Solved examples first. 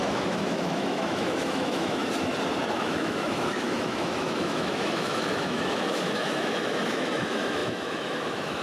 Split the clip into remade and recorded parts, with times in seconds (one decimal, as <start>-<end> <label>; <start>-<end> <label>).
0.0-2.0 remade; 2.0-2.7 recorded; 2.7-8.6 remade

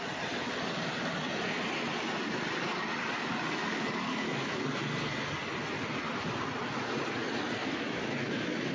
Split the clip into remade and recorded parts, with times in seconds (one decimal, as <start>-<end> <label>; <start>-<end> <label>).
0.0-3.6 recorded; 3.6-4.6 remade; 4.6-7.6 recorded; 7.6-8.7 remade

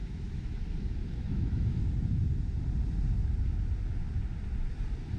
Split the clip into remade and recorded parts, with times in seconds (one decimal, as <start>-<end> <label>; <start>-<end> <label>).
0.0-0.6 remade; 0.6-1.0 recorded; 1.0-1.8 remade; 1.8-5.2 recorded

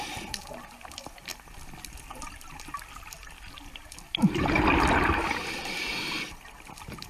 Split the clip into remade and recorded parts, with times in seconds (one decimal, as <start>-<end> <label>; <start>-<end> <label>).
0.0-7.1 recorded

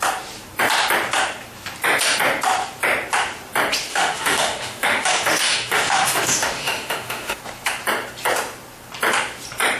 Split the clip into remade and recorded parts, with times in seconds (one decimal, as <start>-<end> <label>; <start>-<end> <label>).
0.0-3.9 recorded; 3.9-7.4 remade; 7.4-9.8 recorded

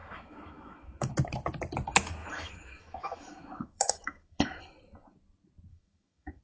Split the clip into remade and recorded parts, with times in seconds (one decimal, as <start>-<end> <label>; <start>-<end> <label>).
0.0-1.1 remade; 1.1-2.2 recorded; 2.2-4.6 remade; 4.6-5.7 recorded; 5.7-6.4 remade